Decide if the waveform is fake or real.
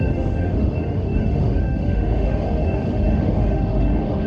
fake